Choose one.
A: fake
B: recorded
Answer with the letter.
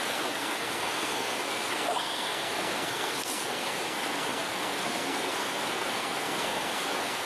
A